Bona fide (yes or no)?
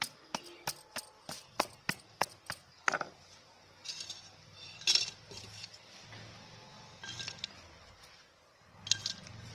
yes